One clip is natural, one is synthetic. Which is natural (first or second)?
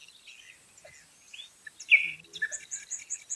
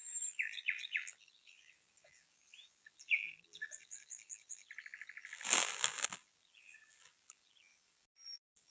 first